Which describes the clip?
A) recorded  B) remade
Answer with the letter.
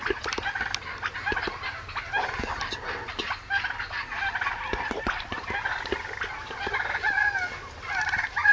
A